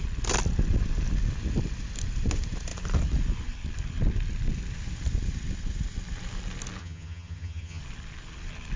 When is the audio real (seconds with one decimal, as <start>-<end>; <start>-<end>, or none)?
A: 0.0-6.8; 7.8-8.8